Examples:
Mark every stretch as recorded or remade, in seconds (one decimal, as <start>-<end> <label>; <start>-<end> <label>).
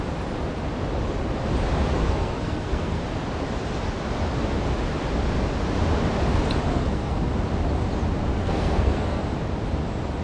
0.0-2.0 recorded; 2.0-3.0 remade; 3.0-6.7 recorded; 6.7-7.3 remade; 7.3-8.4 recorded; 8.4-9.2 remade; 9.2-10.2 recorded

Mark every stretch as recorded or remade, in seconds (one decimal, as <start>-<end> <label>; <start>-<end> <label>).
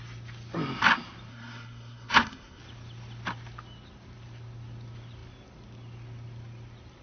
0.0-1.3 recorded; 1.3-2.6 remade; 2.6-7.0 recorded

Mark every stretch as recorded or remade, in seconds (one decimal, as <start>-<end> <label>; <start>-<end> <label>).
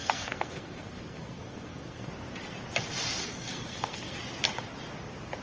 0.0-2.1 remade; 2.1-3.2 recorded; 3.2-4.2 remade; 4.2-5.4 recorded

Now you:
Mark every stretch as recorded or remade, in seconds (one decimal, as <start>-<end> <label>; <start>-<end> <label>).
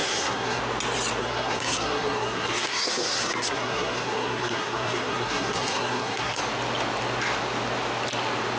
0.0-0.6 remade; 0.6-1.2 recorded; 1.2-6.4 remade; 6.4-8.6 recorded